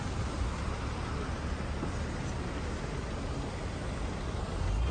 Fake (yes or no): no